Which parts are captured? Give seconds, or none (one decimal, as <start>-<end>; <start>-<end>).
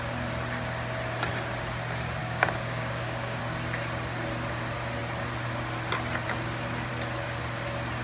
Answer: 0.0-2.2; 3.4-8.0